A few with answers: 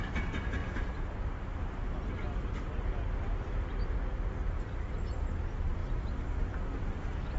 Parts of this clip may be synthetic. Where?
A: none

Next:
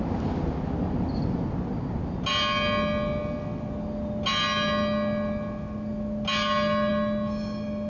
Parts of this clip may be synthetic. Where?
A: none